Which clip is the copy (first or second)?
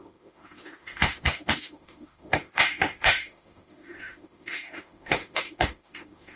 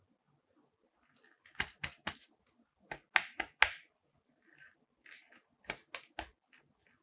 first